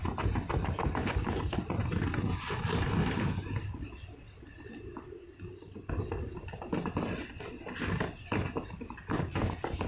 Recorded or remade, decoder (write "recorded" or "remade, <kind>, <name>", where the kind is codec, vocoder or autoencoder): recorded